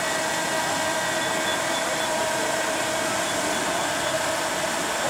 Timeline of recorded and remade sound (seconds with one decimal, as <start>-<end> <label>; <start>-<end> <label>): 0.0-1.5 recorded; 1.5-2.9 remade; 2.9-5.1 recorded